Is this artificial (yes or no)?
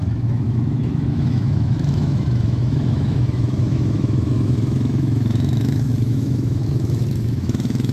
yes